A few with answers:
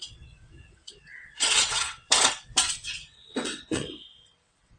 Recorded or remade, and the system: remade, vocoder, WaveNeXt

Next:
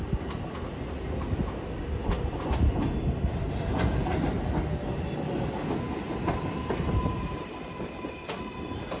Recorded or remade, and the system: recorded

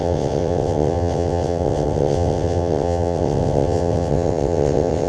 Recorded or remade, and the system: remade, vocoder, WaveNeXt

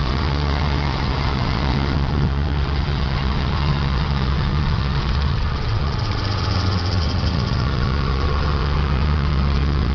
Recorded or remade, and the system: remade, vocoder, WaveNeXt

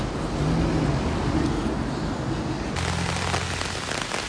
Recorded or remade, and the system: recorded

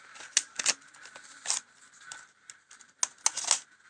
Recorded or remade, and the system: recorded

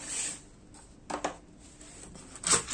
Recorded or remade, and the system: recorded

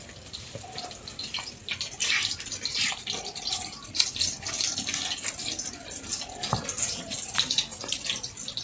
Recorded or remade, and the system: recorded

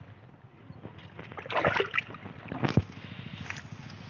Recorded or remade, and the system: recorded